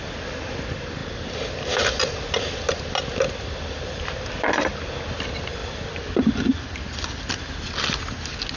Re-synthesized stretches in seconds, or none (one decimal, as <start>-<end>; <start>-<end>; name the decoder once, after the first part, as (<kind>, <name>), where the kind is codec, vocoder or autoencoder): none